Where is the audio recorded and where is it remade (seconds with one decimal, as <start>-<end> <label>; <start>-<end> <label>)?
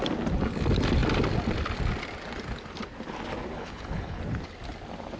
0.0-3.5 recorded; 3.5-4.2 remade; 4.2-5.2 recorded